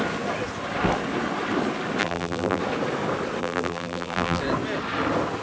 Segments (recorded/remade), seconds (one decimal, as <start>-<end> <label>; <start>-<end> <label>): 0.0-2.0 recorded; 2.0-2.6 remade; 2.6-3.4 recorded; 3.4-4.4 remade; 4.4-5.4 recorded